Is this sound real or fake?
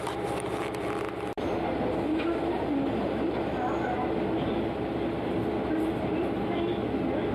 real